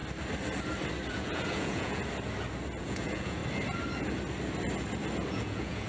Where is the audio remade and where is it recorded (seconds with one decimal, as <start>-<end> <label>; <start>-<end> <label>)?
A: 0.0-1.1 recorded; 1.1-2.0 remade; 2.0-2.8 recorded; 2.8-3.4 remade; 3.4-5.3 recorded; 5.3-5.9 remade

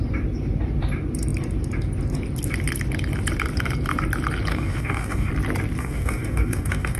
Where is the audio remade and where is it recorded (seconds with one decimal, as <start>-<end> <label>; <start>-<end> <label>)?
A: 0.0-4.5 recorded; 4.5-5.3 remade; 5.3-5.8 recorded; 5.8-7.0 remade

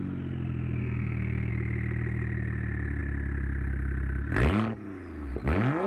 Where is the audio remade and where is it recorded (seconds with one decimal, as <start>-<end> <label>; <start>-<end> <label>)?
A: 0.0-0.8 recorded; 0.8-1.5 remade; 1.5-5.9 recorded

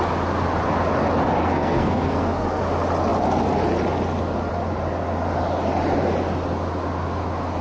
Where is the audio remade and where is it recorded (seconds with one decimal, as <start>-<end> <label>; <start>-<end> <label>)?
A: 0.0-1.4 recorded; 1.4-2.6 remade; 2.6-7.6 recorded

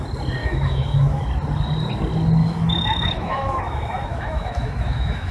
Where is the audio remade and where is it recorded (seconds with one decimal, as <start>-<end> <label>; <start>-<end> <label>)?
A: 0.0-0.4 recorded; 0.4-1.2 remade; 1.2-2.4 recorded; 2.4-5.3 remade

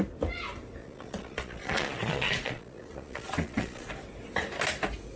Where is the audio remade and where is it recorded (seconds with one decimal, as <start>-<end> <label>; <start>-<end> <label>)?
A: 0.0-0.8 recorded; 0.8-3.9 remade; 3.9-5.2 recorded